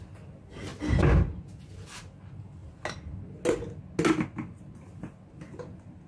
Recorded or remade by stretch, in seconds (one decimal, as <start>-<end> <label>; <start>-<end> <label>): 0.0-6.1 recorded